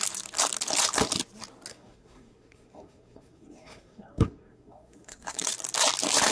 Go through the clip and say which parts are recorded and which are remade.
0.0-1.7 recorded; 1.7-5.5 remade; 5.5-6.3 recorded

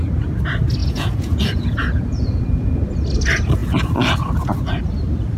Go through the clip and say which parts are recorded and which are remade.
0.0-0.8 recorded; 0.8-2.4 remade; 2.4-5.4 recorded

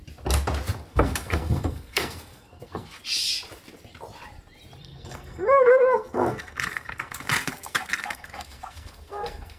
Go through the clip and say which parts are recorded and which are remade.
0.0-0.9 recorded; 0.9-3.0 remade; 3.0-4.8 recorded; 4.8-9.6 remade